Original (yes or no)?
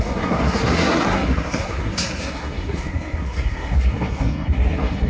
no